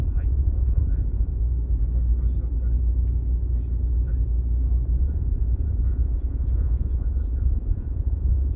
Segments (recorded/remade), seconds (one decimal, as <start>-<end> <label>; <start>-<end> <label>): 0.0-1.3 remade; 1.3-5.0 recorded; 5.0-8.6 remade